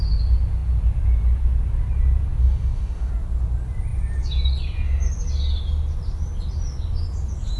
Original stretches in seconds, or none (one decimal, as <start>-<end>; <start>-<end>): 0.0-2.4; 3.1-7.6